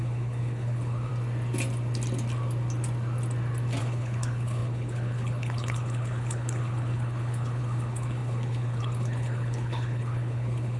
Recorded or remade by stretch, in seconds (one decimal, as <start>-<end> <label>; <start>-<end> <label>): 0.0-1.1 remade; 1.1-3.8 recorded; 3.8-10.8 remade